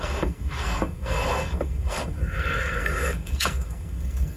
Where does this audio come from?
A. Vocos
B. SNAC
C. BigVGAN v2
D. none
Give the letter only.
B